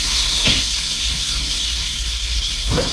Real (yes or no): no